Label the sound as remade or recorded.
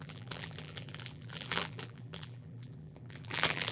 remade